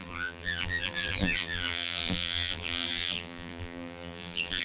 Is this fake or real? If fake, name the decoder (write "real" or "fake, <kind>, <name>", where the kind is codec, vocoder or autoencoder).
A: fake, vocoder, BigVGAN v2